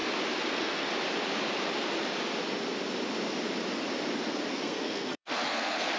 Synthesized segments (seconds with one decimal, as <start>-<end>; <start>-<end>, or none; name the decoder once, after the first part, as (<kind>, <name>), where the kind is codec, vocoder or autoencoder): 0.5-0.9 (codec, SNAC); 4.5-6.0